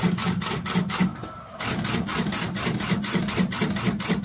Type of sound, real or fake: real